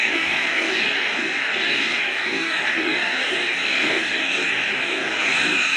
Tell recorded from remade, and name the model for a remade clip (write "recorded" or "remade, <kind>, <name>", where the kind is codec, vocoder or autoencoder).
remade, codec, DAC